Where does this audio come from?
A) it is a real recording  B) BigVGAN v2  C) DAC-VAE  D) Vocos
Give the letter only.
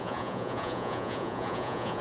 D